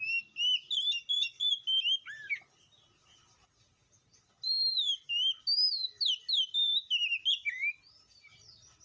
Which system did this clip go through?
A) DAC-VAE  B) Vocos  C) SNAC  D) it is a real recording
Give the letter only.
D